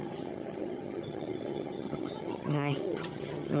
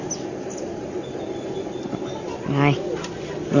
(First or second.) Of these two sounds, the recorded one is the second